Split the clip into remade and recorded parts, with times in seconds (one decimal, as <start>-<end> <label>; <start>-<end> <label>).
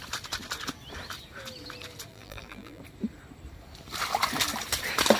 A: 0.0-2.1 recorded; 2.1-2.8 remade; 2.8-5.2 recorded